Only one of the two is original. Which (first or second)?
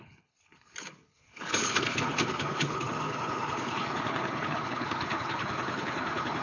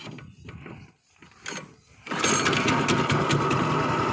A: second